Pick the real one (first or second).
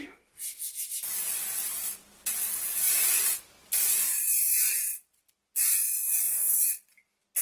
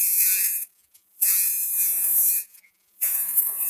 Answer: first